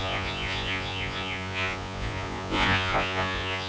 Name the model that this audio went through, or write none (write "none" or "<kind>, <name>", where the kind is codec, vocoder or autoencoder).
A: vocoder, Vocos